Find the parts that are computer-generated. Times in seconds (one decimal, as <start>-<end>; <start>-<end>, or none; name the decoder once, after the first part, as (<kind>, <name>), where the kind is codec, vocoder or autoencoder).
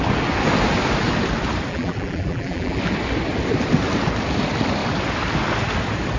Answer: 1.7-2.8 (vocoder, BigVGAN v2)